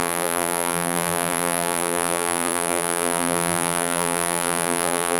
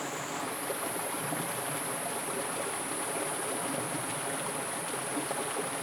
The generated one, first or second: first